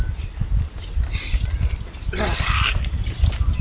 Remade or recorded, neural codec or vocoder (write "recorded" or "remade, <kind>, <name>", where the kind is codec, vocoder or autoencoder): recorded